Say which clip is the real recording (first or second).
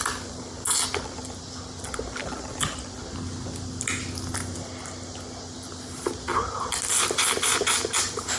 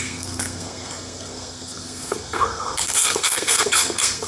first